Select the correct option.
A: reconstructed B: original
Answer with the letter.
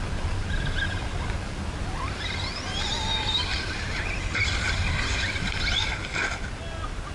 B